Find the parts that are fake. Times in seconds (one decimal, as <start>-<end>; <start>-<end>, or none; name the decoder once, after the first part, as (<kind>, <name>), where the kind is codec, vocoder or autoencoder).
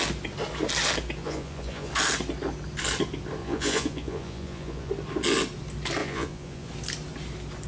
1.2-1.9 (vocoder, Vocos); 3.4-4.9; 6.0-6.7